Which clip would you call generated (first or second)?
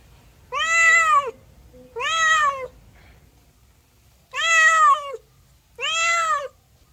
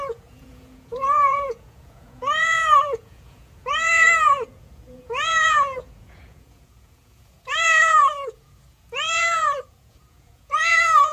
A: second